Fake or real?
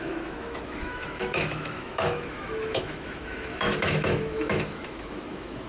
fake